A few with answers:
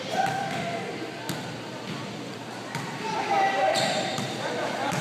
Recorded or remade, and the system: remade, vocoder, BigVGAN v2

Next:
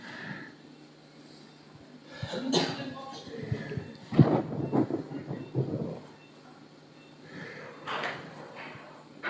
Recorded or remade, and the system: recorded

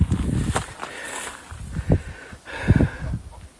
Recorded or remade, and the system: recorded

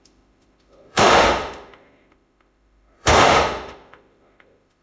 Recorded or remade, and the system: remade, autoencoder, DAC-VAE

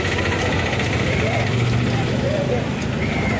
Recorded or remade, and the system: remade, vocoder, BigVGAN v2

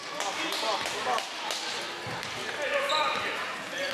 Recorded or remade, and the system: recorded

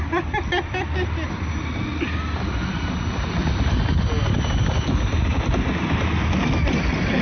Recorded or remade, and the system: recorded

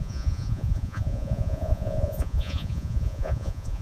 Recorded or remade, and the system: remade, vocoder, Vocos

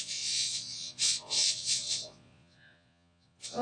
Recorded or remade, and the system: remade, vocoder, Vocos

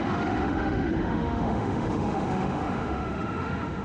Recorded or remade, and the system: remade, autoencoder, DAC-VAE